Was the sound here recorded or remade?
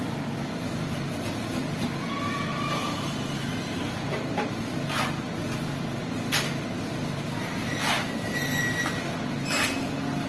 recorded